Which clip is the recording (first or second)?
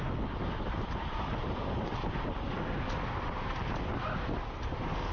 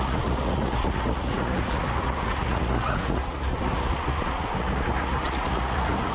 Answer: first